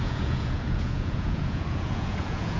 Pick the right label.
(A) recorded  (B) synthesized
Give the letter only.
B